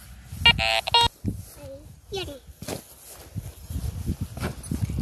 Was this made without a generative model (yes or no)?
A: yes